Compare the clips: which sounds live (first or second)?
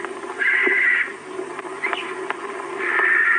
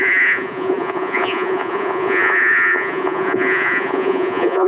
first